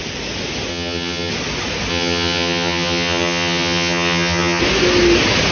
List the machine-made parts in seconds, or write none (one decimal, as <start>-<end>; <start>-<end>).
0.7-1.3; 1.9-4.6